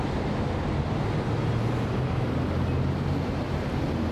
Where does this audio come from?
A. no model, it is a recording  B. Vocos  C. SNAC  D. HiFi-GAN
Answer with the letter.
A